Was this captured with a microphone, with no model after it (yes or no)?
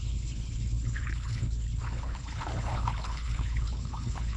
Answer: no